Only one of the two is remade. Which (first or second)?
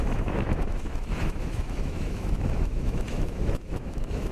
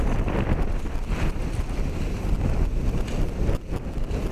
first